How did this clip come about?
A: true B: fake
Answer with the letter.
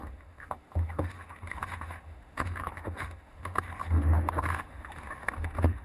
B